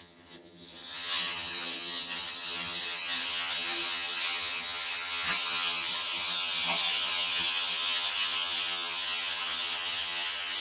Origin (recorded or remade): remade